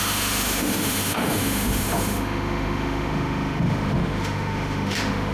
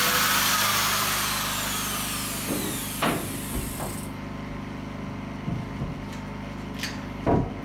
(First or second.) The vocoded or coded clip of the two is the first